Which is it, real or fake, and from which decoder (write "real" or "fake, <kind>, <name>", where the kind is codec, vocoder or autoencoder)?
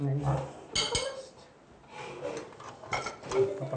real